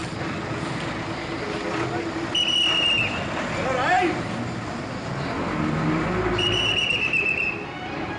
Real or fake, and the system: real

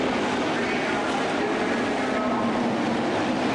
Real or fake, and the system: real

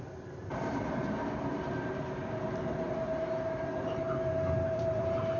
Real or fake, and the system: fake, vocoder, BigVGAN v2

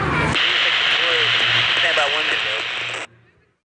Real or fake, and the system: real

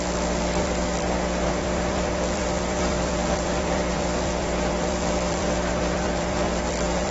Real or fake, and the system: fake, vocoder, BigVGAN v2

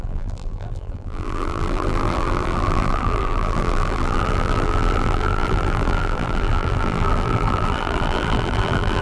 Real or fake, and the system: fake, vocoder, BigVGAN v2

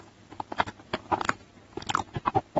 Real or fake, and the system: real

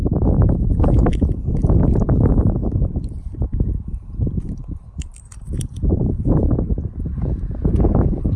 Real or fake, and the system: fake, vocoder, BigVGAN v2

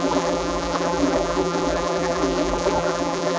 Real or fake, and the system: fake, vocoder, BigVGAN v2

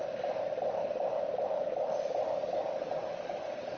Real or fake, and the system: fake, vocoder, BigVGAN v2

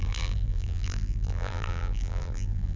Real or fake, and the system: fake, vocoder, BigVGAN v2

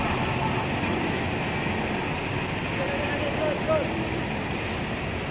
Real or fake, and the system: real